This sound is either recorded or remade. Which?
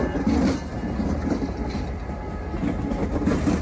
recorded